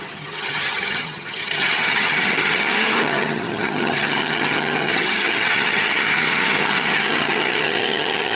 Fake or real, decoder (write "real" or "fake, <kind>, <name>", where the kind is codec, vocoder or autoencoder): fake, vocoder, HiFi-GAN